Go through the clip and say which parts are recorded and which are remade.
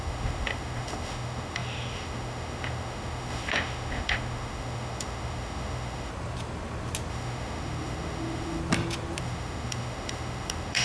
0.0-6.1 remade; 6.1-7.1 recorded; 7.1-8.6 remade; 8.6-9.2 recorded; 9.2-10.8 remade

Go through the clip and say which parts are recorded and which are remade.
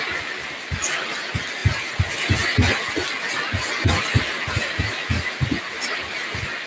0.0-6.7 recorded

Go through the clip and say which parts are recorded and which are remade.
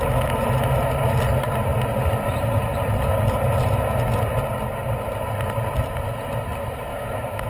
0.0-6.9 recorded; 6.9-7.5 remade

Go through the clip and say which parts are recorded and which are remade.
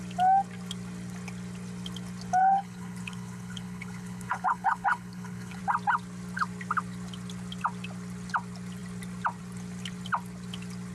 0.0-2.4 recorded; 2.4-5.6 remade; 5.6-10.9 recorded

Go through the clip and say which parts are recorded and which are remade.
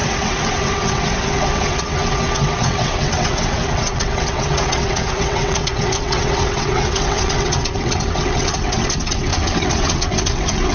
0.0-10.7 remade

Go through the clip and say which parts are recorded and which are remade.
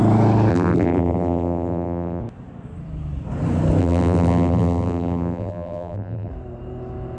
0.0-0.5 recorded; 0.5-2.2 remade; 2.2-3.8 recorded; 3.8-6.3 remade; 6.3-7.2 recorded